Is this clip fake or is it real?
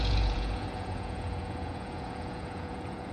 fake